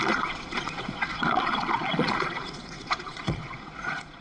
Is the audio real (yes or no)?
no